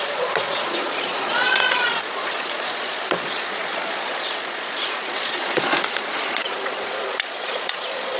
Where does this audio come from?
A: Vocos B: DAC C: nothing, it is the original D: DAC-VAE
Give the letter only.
A